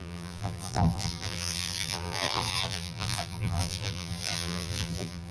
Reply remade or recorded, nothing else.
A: remade